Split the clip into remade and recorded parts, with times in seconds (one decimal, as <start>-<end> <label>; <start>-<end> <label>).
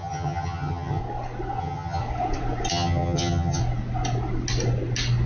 0.0-1.0 remade; 1.0-1.6 recorded; 1.6-2.0 remade; 2.0-2.7 recorded; 2.7-3.6 remade; 3.6-5.3 recorded